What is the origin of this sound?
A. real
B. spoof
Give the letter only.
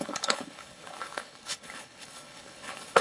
B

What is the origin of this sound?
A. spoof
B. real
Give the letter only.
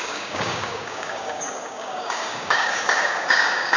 A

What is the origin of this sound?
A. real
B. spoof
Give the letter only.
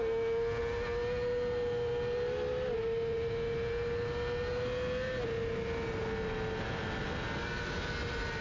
A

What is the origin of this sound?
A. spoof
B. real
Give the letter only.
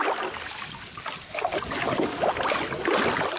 B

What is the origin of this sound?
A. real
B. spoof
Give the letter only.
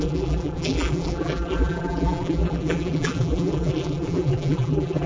B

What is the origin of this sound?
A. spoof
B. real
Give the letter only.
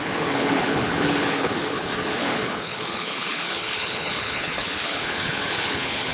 A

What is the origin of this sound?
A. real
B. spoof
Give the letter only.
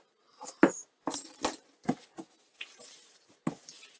A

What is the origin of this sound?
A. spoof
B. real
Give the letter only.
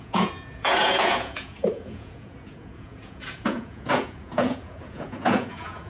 A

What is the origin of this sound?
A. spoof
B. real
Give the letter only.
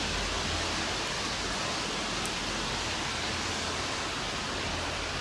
B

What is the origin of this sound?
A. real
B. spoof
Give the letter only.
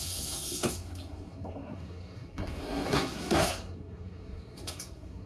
B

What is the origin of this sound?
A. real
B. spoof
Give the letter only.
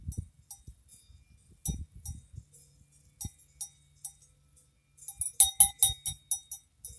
A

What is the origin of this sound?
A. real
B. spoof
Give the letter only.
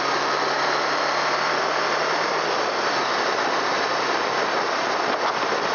A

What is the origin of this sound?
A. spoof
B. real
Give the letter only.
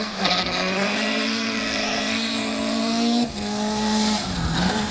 A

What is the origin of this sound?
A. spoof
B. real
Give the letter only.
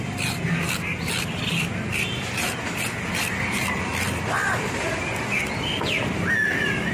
B